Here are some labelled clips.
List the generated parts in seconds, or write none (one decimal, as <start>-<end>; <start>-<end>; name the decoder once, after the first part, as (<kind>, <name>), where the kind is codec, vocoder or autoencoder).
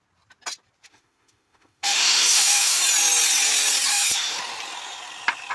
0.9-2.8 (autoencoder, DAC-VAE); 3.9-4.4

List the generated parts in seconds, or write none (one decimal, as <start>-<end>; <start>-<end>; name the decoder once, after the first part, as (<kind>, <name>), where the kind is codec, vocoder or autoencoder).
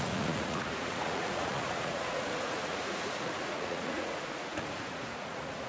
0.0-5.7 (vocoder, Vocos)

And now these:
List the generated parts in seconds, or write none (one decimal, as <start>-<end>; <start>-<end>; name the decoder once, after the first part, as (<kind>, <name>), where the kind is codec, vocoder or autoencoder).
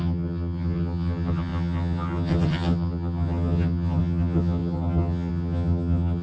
0.0-6.2 (vocoder, HiFi-GAN)